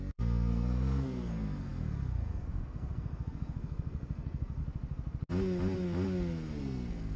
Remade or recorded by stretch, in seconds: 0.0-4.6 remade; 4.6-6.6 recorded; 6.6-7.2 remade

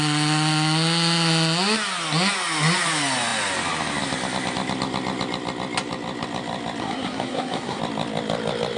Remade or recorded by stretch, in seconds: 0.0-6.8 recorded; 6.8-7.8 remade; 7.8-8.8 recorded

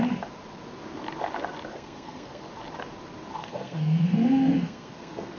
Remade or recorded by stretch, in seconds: 0.0-1.7 recorded; 1.7-2.5 remade; 2.5-3.4 recorded; 3.4-5.4 remade